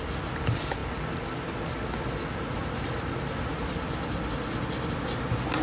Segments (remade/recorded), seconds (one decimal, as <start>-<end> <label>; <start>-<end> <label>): 0.0-5.6 recorded

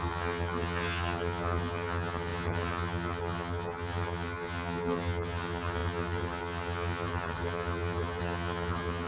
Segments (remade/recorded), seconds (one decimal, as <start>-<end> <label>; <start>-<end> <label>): 0.0-9.1 remade

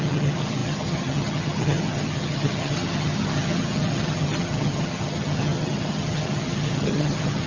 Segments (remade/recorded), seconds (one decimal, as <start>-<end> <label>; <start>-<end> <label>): 0.0-7.5 remade

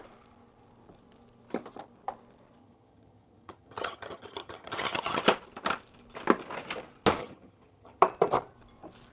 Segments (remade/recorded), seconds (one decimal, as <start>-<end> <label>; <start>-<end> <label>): 0.0-2.6 recorded; 2.6-5.2 remade; 5.2-7.2 recorded; 7.2-8.0 remade; 8.0-9.1 recorded

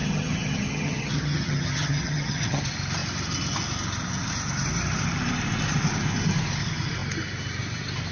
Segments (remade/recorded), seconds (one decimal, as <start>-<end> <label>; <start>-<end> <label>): 0.0-2.6 remade; 2.6-8.1 recorded

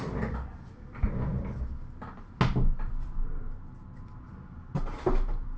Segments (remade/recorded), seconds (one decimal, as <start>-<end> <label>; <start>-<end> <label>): 0.0-5.6 recorded